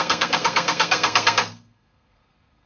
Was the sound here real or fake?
fake